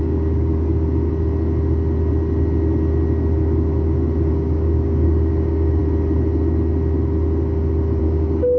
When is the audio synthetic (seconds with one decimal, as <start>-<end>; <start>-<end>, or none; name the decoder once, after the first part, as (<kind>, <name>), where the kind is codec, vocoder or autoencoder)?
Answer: 0.0-0.5 (codec, DAC); 4.3-5.8; 8.0-8.6